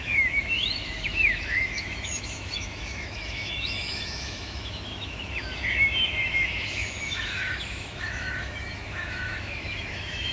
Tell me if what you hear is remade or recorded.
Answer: remade